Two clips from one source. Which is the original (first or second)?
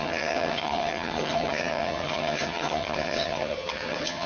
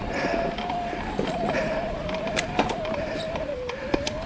second